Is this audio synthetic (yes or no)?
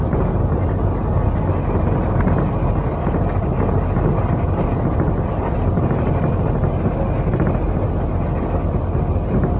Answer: no